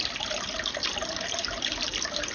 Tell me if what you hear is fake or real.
real